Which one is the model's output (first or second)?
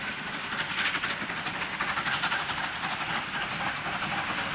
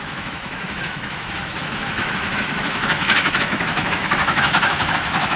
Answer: second